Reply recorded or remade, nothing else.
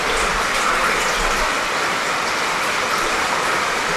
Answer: remade